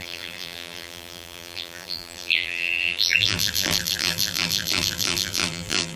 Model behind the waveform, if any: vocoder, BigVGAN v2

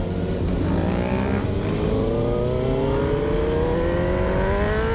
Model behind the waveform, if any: none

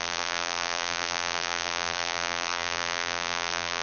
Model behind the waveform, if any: vocoder, BigVGAN v2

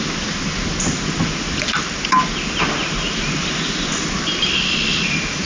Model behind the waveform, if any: none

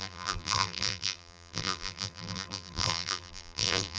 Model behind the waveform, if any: vocoder, BigVGAN v2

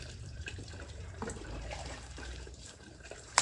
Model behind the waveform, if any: vocoder, BigVGAN v2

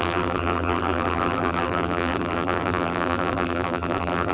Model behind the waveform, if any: vocoder, BigVGAN v2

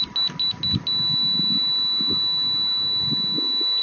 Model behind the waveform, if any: none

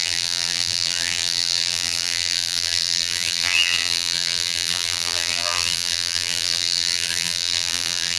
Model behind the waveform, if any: vocoder, BigVGAN v2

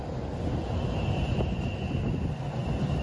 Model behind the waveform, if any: none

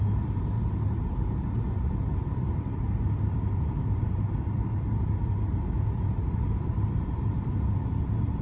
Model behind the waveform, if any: vocoder, BigVGAN v2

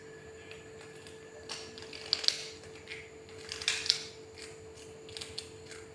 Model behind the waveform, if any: none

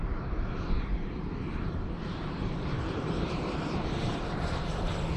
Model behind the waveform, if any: vocoder, BigVGAN v2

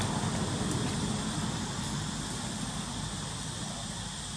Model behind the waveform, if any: none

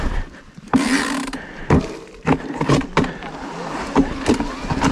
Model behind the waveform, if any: vocoder, BigVGAN v2